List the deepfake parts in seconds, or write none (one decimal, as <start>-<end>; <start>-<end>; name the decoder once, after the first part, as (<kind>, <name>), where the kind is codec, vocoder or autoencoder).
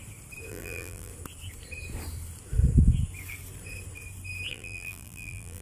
0.5-1.1 (vocoder, BigVGAN v2); 4.5-5.6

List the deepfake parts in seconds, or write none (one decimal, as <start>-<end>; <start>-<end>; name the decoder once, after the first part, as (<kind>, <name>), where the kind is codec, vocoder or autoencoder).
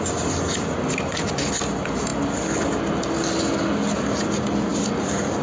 none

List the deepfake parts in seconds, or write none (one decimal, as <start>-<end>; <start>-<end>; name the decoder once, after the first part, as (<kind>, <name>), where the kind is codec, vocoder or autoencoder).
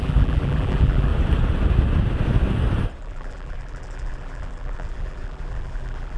0.0-1.1 (vocoder, BigVGAN v2); 3.0-6.2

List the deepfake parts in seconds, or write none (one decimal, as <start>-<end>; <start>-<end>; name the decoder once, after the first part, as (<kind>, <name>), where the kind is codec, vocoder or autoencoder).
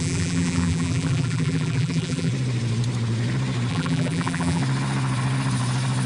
0.0-2.3 (vocoder, BigVGAN v2); 3.7-4.6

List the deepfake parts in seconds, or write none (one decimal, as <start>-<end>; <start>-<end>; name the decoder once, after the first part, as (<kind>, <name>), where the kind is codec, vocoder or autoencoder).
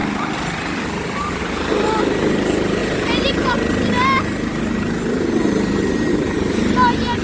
2.8-3.5 (vocoder, BigVGAN v2)